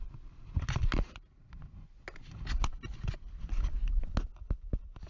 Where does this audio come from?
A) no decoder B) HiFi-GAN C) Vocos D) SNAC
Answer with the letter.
A